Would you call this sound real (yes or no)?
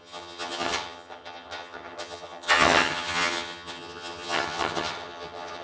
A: no